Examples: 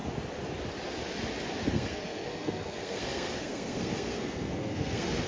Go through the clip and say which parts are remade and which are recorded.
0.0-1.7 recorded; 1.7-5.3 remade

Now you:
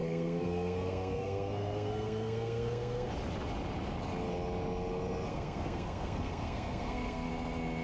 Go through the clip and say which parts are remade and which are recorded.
0.0-3.1 remade; 3.1-5.3 recorded; 5.3-7.3 remade; 7.3-7.8 recorded